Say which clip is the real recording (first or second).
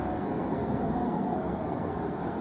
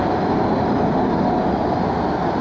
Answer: second